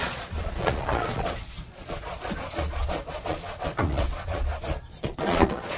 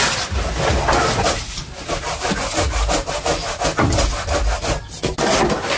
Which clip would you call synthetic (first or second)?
first